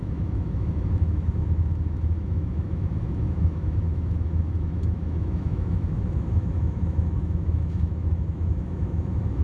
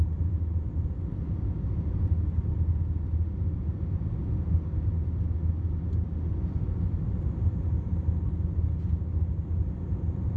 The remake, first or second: first